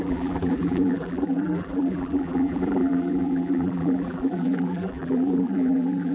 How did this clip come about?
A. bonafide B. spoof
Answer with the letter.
B